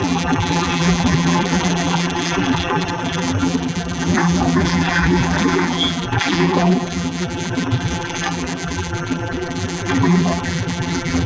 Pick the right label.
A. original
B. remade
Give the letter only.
B